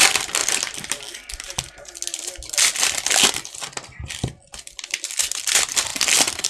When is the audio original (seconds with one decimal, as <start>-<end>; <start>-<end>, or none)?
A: 0.0-6.5